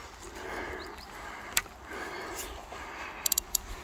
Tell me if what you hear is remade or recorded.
recorded